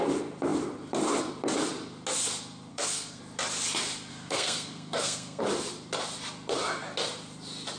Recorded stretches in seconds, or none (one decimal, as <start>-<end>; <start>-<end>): 0.0-2.7; 3.2-4.1; 5.4-7.8